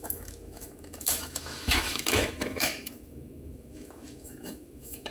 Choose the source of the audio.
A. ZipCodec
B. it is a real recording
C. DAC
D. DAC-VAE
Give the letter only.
D